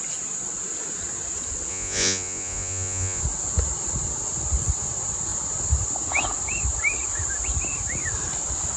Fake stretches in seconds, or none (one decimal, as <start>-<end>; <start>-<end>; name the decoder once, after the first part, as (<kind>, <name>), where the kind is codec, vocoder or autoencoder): 1.7-3.2 (vocoder, Vocos)